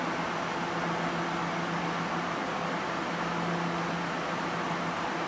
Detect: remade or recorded recorded